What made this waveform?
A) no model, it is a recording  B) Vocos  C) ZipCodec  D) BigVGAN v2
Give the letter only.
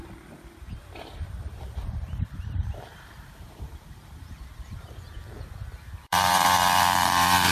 D